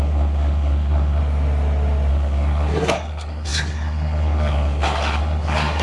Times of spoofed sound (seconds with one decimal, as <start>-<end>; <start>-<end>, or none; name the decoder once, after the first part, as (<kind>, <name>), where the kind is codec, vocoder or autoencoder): 0.0-1.2 (codec, SNAC); 2.1-5.8